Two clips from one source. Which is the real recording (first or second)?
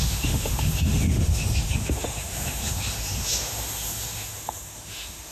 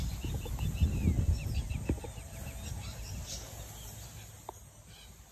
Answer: second